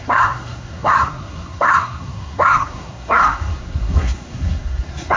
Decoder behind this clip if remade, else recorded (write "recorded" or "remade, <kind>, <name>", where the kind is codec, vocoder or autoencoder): remade, codec, SNAC